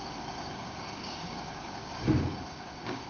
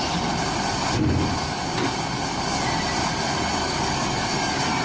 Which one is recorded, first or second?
second